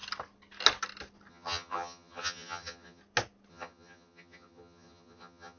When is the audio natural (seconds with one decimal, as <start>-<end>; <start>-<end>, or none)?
0.0-1.3; 3.0-3.5